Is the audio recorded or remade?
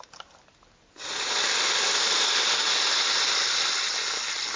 recorded